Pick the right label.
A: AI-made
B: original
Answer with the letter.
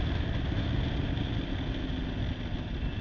B